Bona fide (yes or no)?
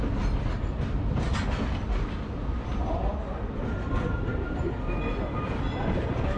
yes